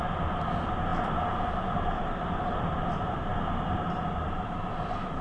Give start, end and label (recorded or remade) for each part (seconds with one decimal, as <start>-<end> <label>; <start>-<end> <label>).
0.0-5.2 recorded